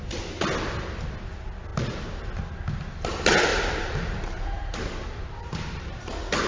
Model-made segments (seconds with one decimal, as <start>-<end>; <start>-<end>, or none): 3.5-6.1